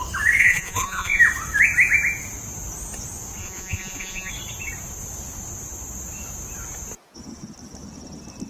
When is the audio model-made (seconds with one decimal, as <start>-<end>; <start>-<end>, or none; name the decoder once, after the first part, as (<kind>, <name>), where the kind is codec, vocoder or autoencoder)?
0.4-1.2 (vocoder, Vocos); 3.4-4.3